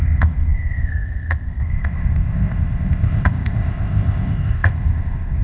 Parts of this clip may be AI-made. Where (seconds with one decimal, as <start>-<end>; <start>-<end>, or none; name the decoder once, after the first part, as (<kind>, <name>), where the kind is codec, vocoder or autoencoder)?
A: 0.0-5.4 (codec, ZipCodec)